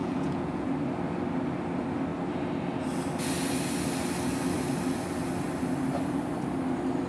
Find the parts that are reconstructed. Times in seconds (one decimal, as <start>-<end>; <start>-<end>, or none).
0.0-0.7